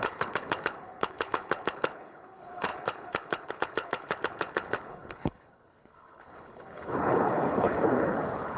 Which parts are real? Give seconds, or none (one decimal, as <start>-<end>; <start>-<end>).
none